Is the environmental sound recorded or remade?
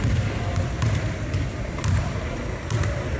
recorded